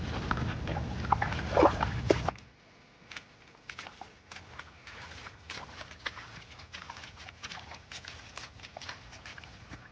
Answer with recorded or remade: recorded